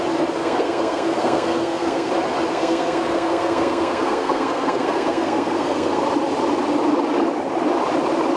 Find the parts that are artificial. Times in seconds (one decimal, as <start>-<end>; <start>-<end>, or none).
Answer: 0.4-2.1; 2.5-6.0